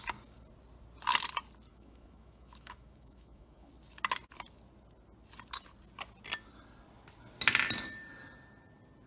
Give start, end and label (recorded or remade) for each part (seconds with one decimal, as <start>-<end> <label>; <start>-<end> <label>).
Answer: 0.0-1.7 recorded; 1.7-3.7 remade; 3.7-9.1 recorded